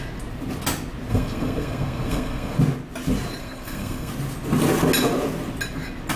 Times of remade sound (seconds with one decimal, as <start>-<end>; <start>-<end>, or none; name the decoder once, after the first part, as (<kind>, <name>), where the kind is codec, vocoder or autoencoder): 1.1-2.6 (codec, SNAC); 3.4-4.1